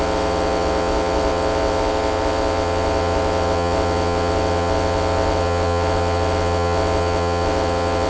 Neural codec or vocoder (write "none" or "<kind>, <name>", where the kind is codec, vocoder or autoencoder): vocoder, WaveNeXt